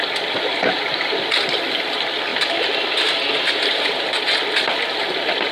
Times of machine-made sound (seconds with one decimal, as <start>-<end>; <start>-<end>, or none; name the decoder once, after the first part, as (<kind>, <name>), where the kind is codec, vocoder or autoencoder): none